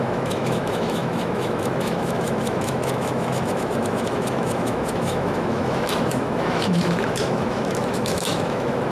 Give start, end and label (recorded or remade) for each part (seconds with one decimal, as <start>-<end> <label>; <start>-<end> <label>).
0.0-8.9 remade